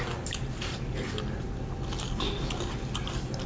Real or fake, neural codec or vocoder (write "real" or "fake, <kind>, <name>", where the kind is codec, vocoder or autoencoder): real